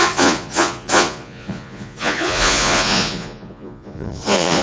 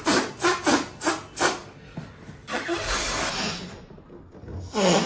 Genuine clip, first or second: second